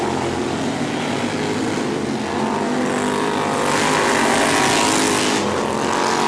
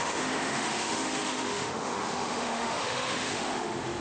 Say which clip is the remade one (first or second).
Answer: second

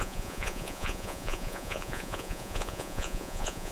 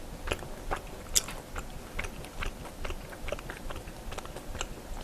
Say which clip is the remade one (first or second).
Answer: first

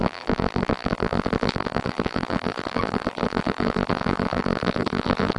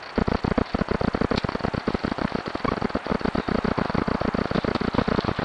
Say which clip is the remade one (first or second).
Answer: first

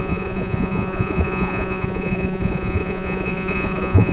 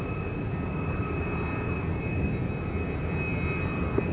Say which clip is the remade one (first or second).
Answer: first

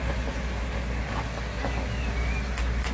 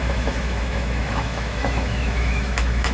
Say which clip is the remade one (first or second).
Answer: second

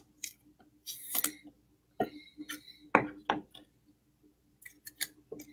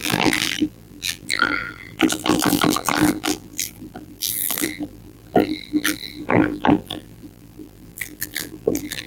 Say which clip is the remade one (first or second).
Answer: second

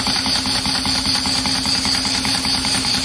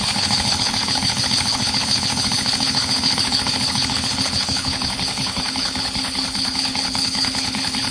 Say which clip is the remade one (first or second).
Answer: second